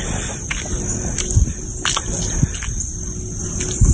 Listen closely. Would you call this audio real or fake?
real